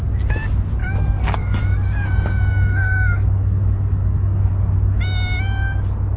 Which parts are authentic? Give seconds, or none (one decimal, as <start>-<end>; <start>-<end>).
0.0-0.8; 4.5-6.2